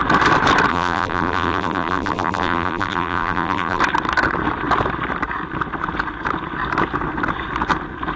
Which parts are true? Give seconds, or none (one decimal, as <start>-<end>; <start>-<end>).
0.0-0.7; 3.8-8.2